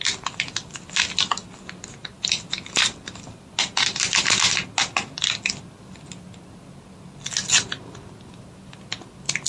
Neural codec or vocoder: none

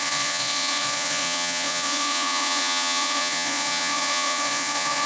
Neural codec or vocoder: vocoder, Vocos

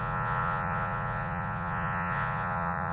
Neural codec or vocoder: vocoder, Vocos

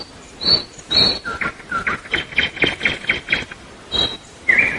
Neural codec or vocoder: none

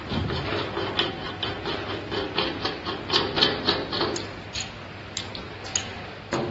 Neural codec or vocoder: none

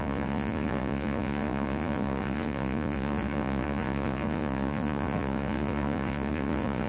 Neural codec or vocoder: vocoder, Vocos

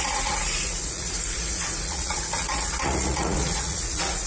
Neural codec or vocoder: vocoder, Vocos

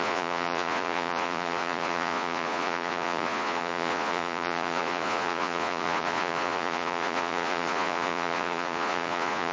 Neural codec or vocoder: vocoder, Vocos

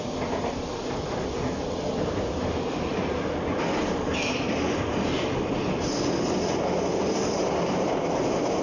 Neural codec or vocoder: none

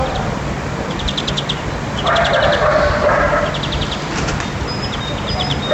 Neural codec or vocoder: none